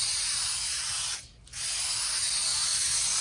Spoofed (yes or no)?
no